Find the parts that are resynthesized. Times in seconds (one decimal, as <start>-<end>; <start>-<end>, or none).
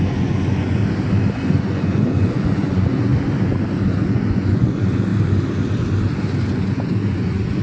0.0-0.8; 1.3-3.1; 4.0-5.1; 6.5-7.6